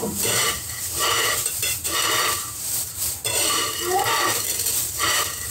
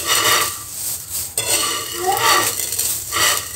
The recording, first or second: second